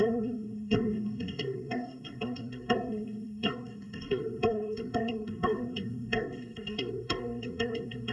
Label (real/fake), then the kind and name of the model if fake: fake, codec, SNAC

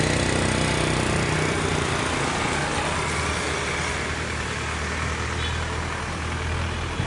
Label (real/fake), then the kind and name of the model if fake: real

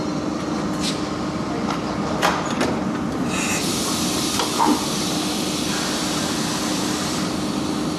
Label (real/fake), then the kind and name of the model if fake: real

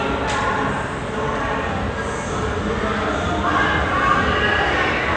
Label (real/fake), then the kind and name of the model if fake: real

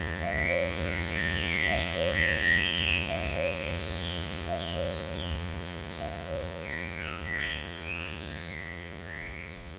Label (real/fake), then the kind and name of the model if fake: fake, vocoder, Vocos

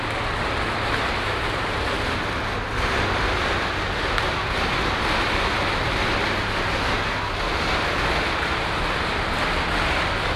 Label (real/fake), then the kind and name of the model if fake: real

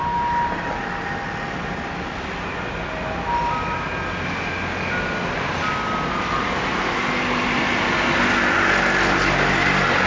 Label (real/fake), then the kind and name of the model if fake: real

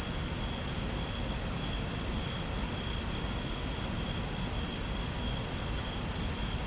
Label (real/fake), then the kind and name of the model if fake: real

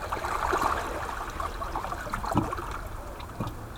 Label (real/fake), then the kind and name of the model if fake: real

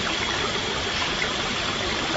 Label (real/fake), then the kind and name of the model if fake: fake, vocoder, BigVGAN v2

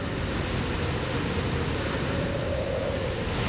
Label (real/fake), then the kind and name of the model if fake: real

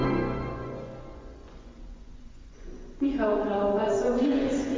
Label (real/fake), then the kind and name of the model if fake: fake, vocoder, Vocos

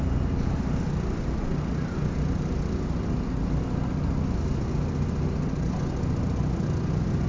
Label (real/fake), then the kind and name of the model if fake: real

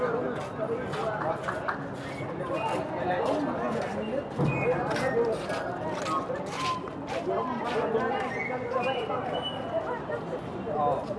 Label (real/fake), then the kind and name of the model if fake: real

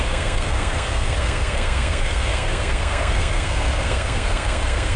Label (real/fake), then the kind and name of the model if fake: fake, codec, SNAC